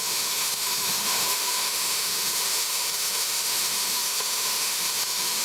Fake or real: fake